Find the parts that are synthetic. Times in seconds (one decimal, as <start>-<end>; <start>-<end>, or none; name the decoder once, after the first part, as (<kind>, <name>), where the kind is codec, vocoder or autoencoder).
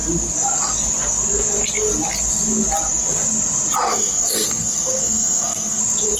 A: 3.9-5.8 (codec, SNAC)